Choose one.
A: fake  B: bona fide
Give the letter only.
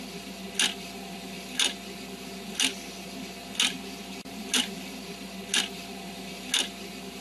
B